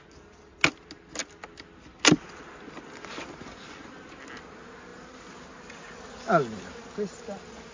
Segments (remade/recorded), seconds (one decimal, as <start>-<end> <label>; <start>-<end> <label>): 0.0-7.7 recorded